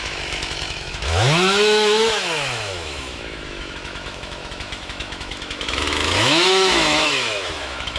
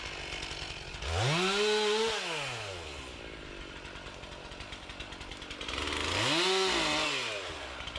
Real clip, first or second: second